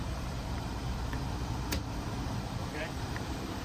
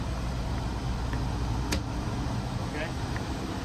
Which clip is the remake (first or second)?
first